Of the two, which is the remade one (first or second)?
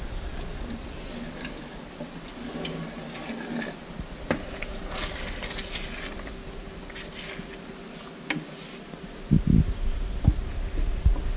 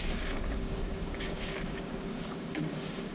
second